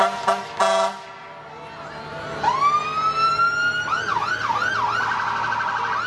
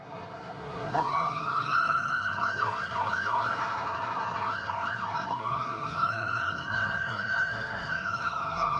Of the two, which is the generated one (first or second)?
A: second